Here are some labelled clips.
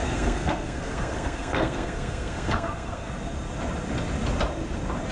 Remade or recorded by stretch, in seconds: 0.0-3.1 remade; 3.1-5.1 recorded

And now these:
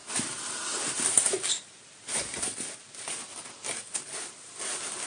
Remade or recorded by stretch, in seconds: 0.0-5.1 recorded

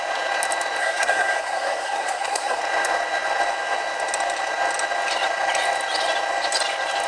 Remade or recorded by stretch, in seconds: 0.0-0.8 recorded; 0.8-2.6 remade; 2.6-7.1 recorded

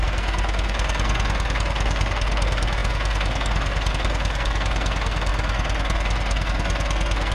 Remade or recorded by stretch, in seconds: 0.0-7.3 remade

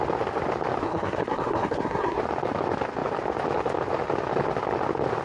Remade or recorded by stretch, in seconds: 0.0-0.8 recorded; 0.8-2.2 remade; 2.2-5.2 recorded

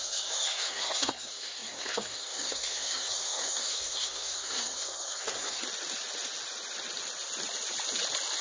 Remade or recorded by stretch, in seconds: 0.0-5.6 remade; 5.6-8.4 recorded

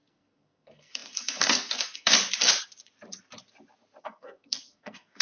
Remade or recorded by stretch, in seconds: 0.0-2.1 remade; 2.1-4.0 recorded; 4.0-5.2 remade

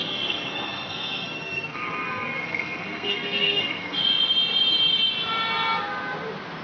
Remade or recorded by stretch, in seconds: 0.0-4.0 remade; 4.0-6.6 recorded